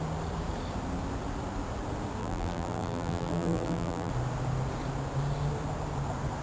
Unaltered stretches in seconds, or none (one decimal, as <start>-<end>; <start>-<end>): 0.0-2.2; 4.1-6.4